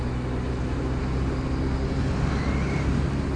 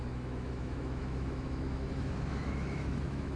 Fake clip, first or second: second